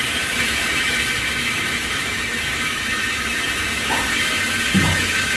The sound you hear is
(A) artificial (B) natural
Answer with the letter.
A